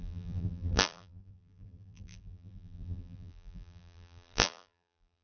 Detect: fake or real fake